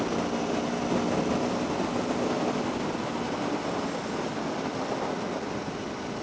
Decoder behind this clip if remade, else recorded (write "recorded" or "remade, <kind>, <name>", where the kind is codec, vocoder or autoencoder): recorded